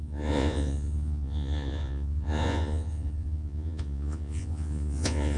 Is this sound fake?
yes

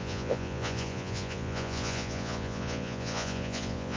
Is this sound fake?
yes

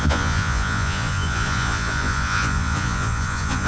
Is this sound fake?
yes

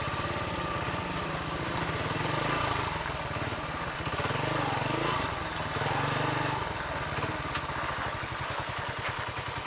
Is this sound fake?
no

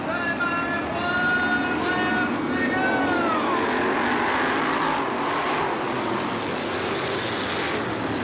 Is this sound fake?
no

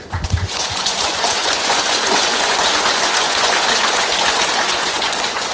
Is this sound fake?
yes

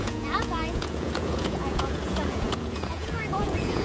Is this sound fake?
yes